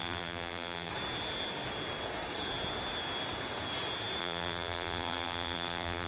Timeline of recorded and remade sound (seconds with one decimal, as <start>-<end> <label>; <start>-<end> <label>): 0.0-0.9 remade; 0.9-4.2 recorded; 4.2-6.1 remade